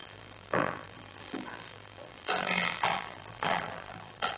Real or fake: fake